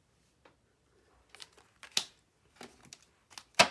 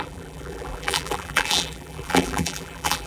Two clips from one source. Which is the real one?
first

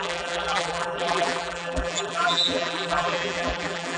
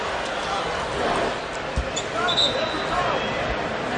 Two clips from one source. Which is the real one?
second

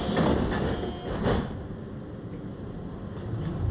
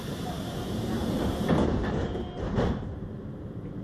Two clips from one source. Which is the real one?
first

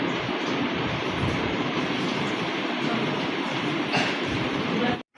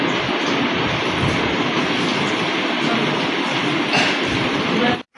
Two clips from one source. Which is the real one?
second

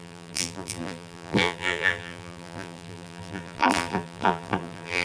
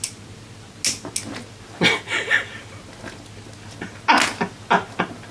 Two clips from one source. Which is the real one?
second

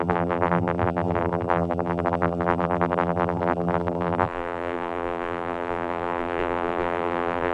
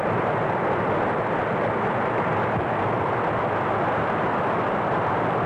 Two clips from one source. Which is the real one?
second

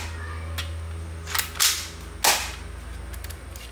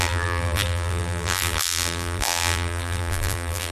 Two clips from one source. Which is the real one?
first